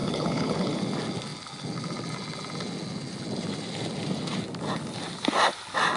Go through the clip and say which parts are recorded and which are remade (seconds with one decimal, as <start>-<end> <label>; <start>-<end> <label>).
0.0-0.8 remade; 0.8-6.0 recorded